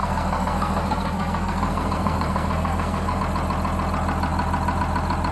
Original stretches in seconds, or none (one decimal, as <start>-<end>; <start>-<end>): 3.2-5.3